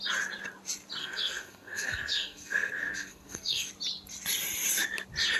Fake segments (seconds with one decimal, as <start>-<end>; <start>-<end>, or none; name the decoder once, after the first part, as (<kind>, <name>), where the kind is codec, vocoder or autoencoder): 1.0-3.7 (codec, SNAC)